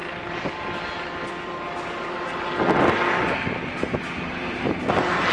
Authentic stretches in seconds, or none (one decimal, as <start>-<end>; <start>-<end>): 0.0-5.3